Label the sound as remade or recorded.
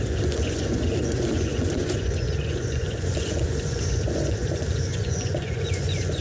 remade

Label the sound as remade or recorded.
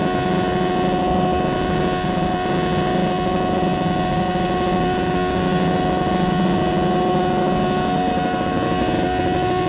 recorded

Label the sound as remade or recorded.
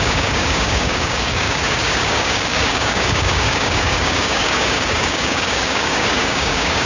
remade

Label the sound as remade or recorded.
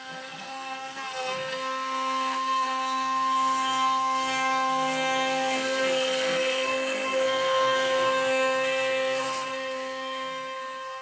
remade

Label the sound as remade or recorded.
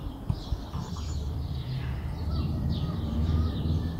remade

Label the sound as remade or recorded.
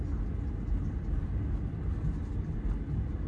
recorded